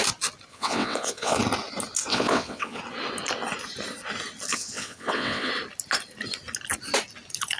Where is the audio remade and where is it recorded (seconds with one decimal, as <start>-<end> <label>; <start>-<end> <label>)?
0.0-0.5 recorded; 0.5-1.4 remade; 1.4-2.1 recorded; 2.1-2.8 remade; 2.8-4.5 recorded; 4.5-5.5 remade; 5.5-7.6 recorded

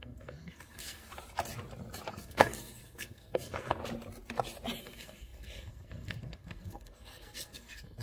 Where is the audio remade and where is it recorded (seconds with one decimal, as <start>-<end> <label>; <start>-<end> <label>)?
0.0-1.1 remade; 1.1-2.1 recorded; 2.1-3.8 remade; 3.8-4.8 recorded; 4.8-8.0 remade

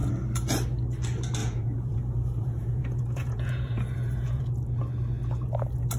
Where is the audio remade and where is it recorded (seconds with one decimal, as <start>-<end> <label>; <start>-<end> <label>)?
0.0-1.4 recorded; 1.4-4.4 remade; 4.4-6.0 recorded